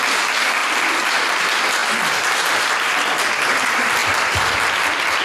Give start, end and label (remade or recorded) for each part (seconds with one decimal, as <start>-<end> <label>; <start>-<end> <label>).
0.0-0.6 recorded; 0.6-1.4 remade; 1.4-1.8 recorded; 1.8-2.3 remade; 2.3-4.0 recorded; 4.0-5.2 remade